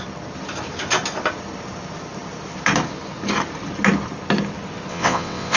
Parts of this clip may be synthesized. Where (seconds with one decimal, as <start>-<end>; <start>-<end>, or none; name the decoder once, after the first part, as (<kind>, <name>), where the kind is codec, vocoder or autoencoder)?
4.9-5.6 (vocoder, WaveNeXt)

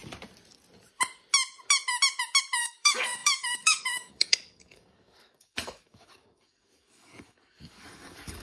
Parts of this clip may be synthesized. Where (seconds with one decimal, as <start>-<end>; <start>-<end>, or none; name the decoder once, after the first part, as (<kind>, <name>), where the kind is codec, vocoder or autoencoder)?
2.6-8.4 (codec, DAC)

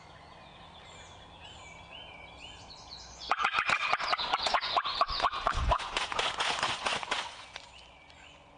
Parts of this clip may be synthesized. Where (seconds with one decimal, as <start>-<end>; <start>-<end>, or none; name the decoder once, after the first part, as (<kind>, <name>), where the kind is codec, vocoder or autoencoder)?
0.0-0.5 (vocoder, Vocos); 2.7-8.6

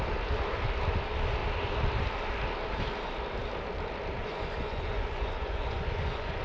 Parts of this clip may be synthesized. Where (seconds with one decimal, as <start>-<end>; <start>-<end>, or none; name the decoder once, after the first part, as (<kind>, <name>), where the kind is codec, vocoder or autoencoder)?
4.2-6.4 (vocoder, Vocos)

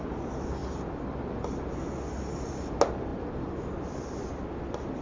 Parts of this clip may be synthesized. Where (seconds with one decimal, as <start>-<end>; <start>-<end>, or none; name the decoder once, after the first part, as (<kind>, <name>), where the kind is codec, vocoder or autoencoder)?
none